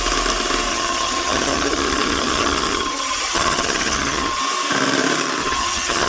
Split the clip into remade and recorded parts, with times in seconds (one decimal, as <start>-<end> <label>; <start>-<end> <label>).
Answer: 0.0-0.7 recorded; 0.7-4.4 remade; 4.4-5.4 recorded; 5.4-6.1 remade